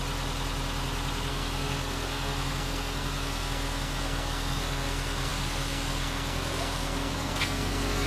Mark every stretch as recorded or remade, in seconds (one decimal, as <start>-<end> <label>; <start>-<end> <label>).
0.0-1.3 recorded; 1.3-8.1 remade